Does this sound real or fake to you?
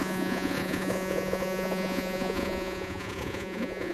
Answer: fake